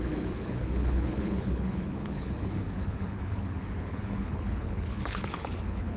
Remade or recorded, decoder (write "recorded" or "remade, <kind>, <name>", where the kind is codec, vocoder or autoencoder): remade, codec, HILCodec